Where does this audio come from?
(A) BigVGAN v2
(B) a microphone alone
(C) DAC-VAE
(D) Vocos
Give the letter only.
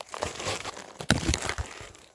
A